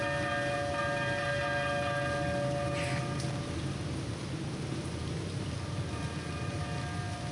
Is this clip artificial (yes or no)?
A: no